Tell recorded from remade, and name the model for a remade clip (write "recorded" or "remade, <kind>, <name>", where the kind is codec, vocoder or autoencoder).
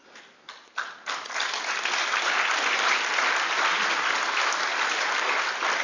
recorded